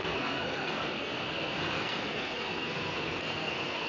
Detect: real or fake fake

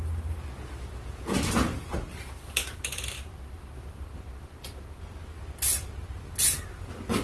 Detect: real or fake real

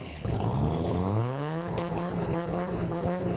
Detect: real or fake fake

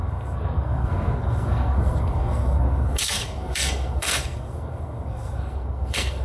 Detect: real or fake fake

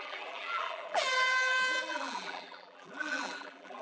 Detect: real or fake fake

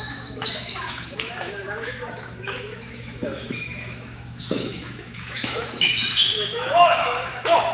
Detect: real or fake fake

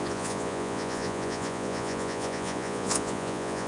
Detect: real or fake fake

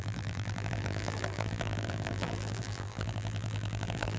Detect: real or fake fake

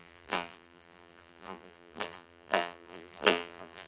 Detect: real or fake fake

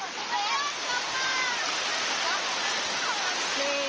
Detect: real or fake real